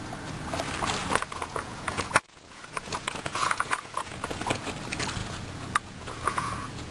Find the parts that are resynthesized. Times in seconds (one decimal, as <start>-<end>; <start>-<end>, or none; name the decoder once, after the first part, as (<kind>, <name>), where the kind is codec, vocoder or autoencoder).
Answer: 1.0-4.7 (vocoder, Vocos); 5.2-6.9